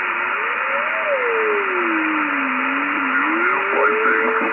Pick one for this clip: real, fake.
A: real